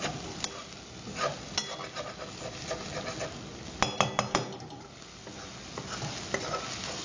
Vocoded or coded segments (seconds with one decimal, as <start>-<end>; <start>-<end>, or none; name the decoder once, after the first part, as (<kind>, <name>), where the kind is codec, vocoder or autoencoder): none